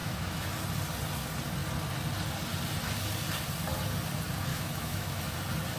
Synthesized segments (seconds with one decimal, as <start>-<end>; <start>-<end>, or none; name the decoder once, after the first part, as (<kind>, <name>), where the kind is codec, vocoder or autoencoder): 0.0-0.5 (autoencoder, DAC-VAE); 4.5-5.2